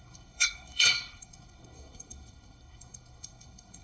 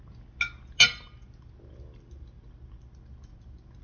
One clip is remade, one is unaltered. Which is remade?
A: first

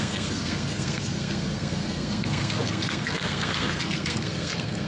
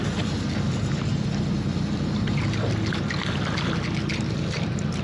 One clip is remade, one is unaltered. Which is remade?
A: first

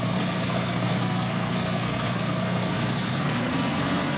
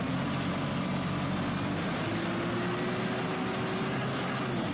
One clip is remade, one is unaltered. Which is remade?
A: first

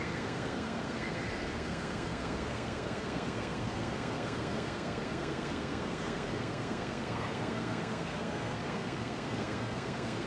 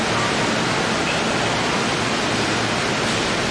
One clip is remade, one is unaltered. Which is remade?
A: first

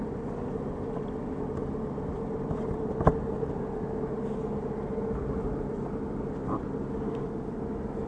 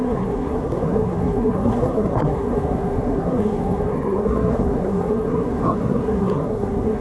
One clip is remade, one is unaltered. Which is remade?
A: second